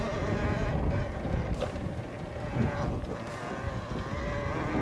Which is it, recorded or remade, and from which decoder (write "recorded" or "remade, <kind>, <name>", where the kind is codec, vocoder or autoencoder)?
recorded